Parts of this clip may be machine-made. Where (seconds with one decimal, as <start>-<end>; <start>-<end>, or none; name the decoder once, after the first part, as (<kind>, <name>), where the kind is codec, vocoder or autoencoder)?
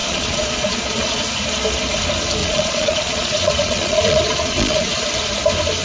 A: 0.0-1.2 (vocoder, Vocos); 2.4-4.9